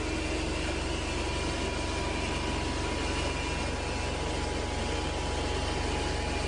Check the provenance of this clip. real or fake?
real